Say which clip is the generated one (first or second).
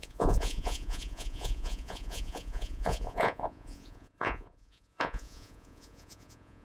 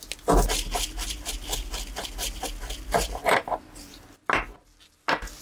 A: first